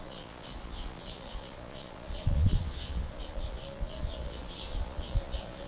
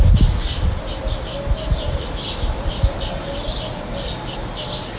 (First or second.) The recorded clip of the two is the second